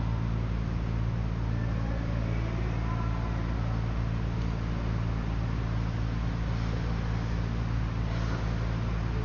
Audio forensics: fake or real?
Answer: real